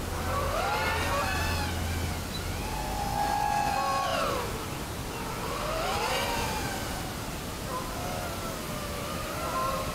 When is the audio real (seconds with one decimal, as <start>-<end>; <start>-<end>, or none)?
0.0-9.9